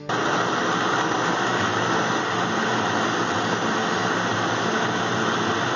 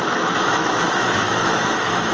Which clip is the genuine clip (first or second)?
first